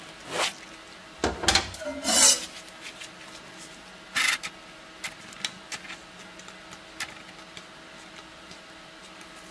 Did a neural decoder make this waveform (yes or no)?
no